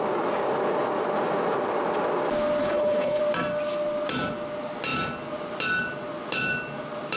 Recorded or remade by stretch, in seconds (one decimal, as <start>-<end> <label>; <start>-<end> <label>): 0.0-2.6 recorded; 2.6-3.2 remade; 3.2-7.2 recorded